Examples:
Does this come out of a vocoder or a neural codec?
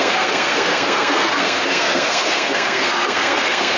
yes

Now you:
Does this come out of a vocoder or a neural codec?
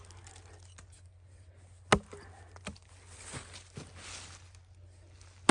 no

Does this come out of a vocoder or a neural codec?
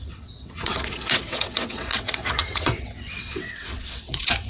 yes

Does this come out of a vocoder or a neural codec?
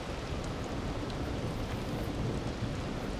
no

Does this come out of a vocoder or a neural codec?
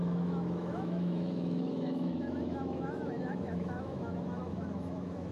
yes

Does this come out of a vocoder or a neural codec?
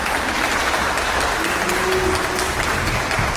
no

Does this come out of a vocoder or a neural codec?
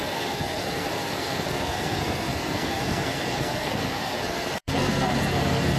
yes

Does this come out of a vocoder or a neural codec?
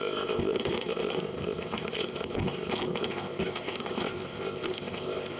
yes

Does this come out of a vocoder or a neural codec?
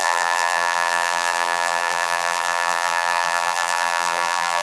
yes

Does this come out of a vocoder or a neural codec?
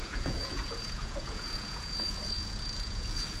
yes